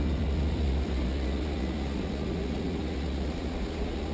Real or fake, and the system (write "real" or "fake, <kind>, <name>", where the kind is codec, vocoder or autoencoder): fake, vocoder, Vocos